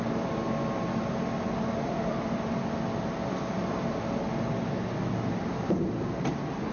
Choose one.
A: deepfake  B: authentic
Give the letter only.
B